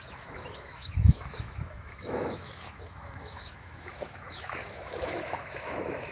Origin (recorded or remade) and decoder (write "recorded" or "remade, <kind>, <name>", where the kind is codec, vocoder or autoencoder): remade, autoencoder, DAC-VAE